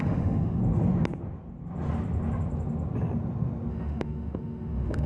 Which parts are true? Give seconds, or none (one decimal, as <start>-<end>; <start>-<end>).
0.6-3.7